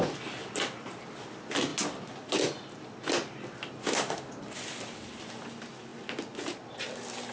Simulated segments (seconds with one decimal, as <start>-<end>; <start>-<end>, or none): 3.8-4.3